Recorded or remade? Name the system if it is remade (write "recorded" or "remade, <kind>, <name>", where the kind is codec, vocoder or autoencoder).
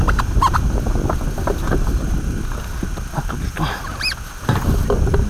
recorded